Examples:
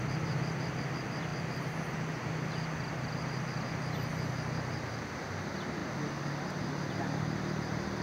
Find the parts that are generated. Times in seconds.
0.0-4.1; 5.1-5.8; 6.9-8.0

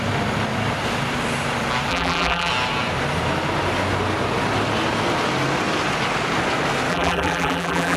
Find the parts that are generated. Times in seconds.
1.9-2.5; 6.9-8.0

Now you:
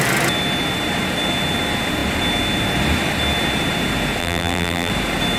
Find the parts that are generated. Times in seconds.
4.2-4.9